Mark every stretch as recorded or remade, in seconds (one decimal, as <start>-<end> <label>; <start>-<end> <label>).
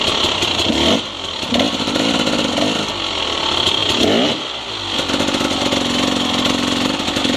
0.0-7.4 recorded